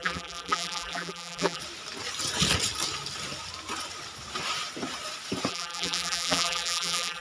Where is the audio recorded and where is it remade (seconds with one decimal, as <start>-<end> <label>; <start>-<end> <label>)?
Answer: 0.0-1.6 remade; 1.6-5.5 recorded; 5.5-7.2 remade